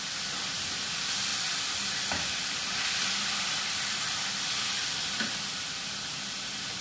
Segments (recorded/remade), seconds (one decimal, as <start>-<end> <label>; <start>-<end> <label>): 0.0-1.3 recorded; 1.3-5.4 remade; 5.4-6.8 recorded